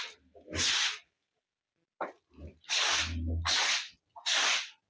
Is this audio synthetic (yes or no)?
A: no